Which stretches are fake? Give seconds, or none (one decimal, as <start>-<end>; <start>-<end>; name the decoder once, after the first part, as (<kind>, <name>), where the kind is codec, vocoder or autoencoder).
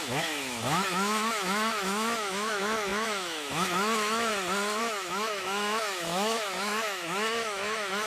0.0-4.3 (autoencoder, DAC-VAE); 4.8-8.1